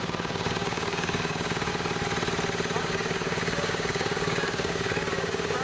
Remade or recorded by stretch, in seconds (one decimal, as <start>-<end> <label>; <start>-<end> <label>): 0.0-1.7 remade; 1.7-2.8 recorded; 2.8-5.6 remade